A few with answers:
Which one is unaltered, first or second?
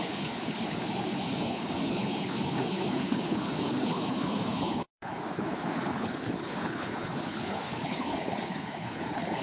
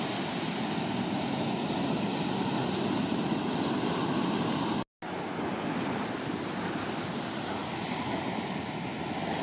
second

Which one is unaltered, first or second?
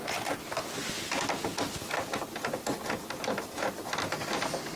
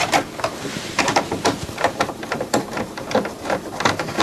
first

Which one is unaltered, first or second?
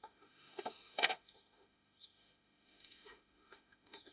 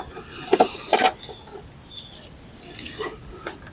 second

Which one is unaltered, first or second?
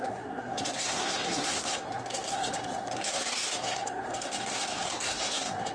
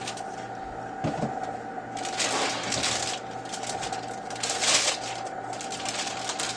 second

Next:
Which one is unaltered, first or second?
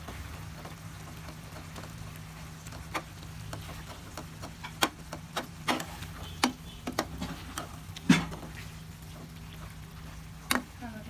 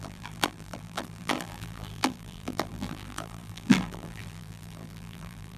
first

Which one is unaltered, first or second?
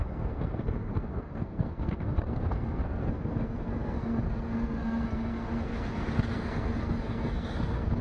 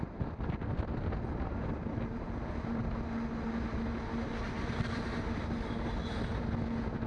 second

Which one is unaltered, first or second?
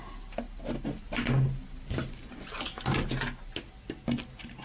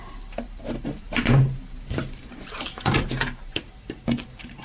first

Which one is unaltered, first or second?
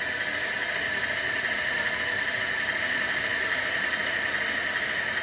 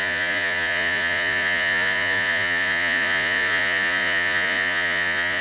first